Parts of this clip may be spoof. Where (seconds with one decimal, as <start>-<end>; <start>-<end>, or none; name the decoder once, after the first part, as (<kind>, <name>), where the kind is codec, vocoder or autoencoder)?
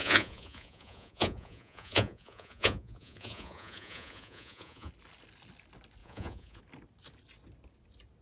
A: 0.0-4.9 (vocoder, Vocos); 6.0-6.6